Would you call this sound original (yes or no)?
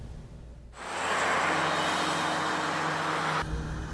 yes